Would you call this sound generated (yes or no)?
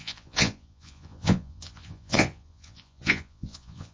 yes